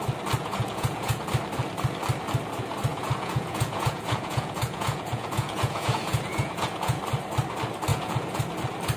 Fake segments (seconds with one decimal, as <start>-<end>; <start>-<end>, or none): 0.4-1.2; 2.9-7.0; 7.9-8.4

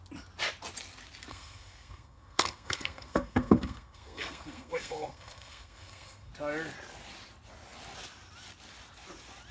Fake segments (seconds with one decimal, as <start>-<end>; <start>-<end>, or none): 1.3-6.3

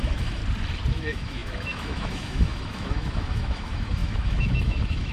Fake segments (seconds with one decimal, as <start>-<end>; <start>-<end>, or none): 0.0-0.4; 0.9-5.1

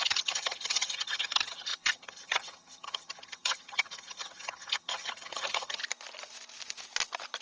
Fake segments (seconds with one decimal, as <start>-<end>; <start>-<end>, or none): 0.0-5.8

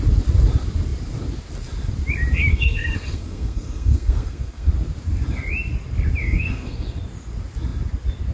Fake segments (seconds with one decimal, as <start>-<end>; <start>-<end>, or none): 2.5-4.7; 6.2-7.0